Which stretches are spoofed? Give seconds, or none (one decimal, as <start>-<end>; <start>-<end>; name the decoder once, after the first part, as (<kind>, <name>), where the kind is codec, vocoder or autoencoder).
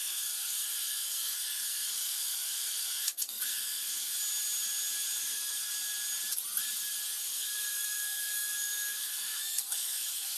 0.0-4.1 (codec, SNAC); 5.2-5.7; 7.3-10.4